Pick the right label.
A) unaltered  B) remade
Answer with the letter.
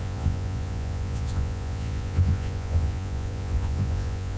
B